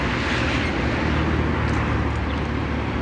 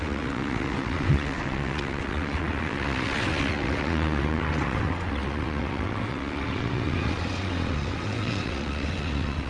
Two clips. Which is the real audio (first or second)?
first